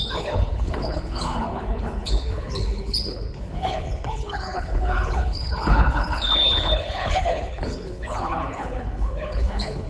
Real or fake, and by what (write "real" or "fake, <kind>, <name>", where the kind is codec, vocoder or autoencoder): fake, codec, HILCodec